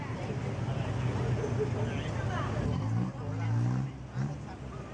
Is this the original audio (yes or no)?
yes